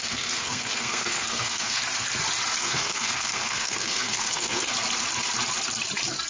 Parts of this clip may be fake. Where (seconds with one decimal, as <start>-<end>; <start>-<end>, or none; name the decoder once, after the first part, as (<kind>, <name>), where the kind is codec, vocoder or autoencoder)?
0.0-1.8 (codec, SNAC); 2.6-4.7